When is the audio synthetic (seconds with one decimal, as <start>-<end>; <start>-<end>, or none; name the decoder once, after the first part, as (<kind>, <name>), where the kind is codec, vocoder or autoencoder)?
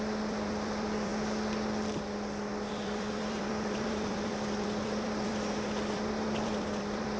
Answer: 0.0-1.1 (vocoder, BigVGAN v2); 2.7-7.2